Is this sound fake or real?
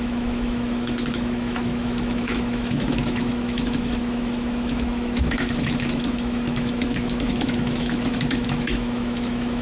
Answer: fake